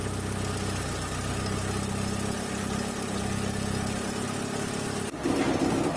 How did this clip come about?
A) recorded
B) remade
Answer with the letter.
A